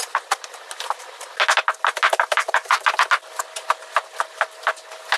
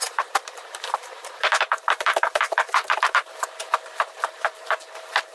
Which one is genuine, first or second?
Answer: first